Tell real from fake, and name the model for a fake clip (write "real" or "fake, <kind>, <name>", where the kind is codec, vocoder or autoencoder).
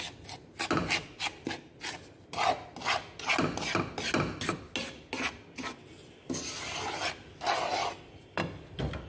real